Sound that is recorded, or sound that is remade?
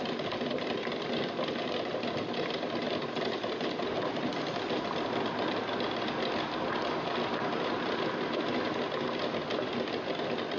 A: recorded